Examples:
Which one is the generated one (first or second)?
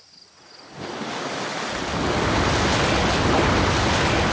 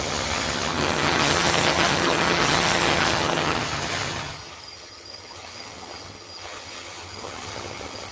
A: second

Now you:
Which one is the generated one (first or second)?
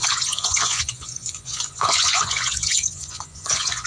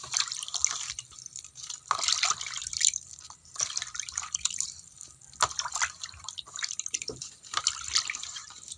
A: first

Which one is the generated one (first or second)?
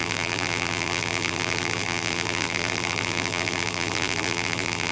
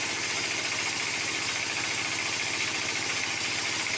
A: first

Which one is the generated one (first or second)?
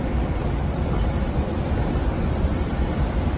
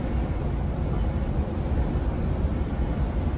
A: first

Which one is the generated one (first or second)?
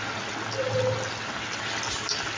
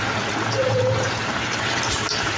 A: second